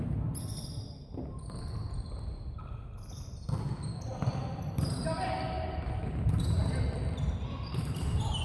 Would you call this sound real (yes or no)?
yes